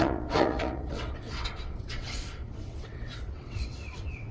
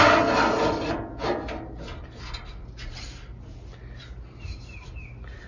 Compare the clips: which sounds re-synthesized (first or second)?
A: first